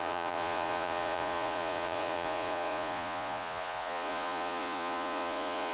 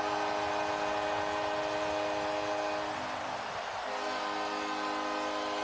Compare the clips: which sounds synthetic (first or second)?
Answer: first